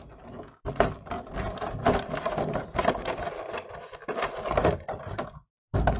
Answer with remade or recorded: recorded